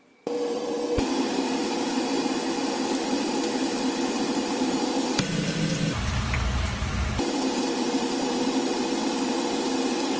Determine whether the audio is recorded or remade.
remade